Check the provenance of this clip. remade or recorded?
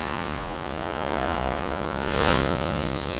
remade